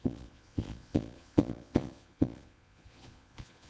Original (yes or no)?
no